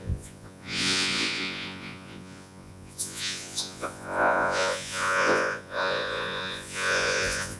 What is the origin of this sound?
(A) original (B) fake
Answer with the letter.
B